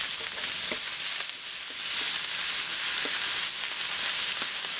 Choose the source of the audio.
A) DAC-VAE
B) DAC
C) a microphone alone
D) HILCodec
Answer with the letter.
C